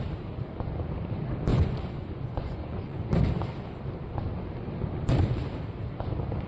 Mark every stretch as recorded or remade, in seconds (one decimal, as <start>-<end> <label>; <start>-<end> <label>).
0.0-1.5 recorded; 1.5-3.1 remade; 3.1-6.5 recorded